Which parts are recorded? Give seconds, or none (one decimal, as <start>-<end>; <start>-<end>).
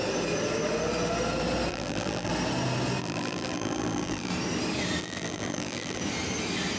0.0-1.7; 2.3-3.0; 4.3-5.0; 6.0-6.8